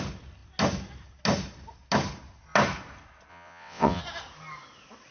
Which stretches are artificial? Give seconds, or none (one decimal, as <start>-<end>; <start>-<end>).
3.3-4.0

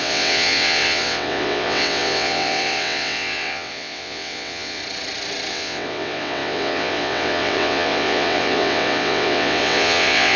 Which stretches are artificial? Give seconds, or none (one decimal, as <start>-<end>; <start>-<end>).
0.0-4.8; 5.5-10.4

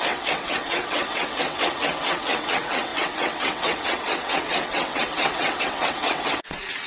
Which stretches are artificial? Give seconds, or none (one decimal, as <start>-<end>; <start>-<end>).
0.0-6.9